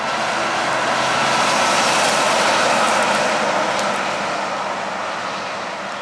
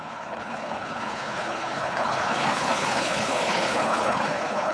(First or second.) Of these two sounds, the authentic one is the first